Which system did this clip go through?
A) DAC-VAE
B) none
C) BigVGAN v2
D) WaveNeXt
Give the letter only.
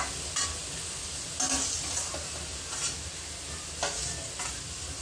B